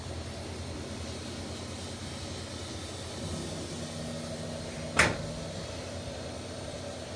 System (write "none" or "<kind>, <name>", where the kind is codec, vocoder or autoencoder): none